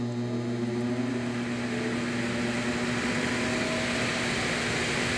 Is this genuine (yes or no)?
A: yes